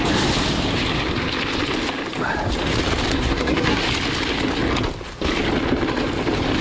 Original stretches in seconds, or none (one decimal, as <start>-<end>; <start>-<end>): 0.0-3.1; 3.8-6.6